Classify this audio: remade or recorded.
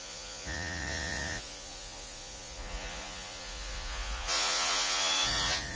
remade